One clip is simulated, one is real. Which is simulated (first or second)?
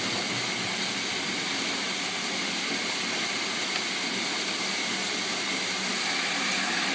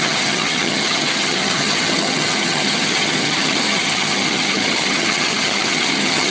second